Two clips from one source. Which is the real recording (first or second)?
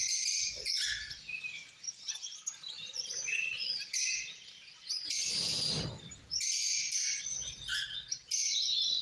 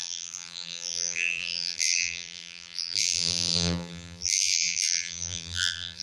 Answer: first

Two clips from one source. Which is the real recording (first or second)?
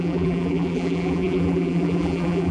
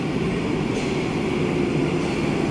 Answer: second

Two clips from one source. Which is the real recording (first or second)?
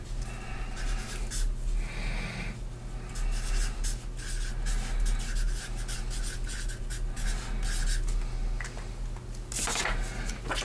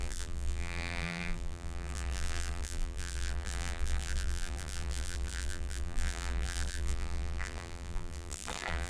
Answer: first